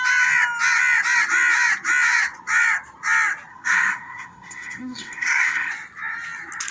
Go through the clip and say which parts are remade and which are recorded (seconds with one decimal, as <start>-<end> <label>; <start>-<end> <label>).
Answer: 0.0-3.5 recorded; 3.5-5.7 remade; 5.7-6.7 recorded